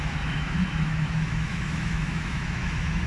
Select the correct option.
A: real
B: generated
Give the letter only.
B